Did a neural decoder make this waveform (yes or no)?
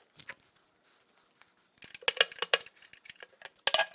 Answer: no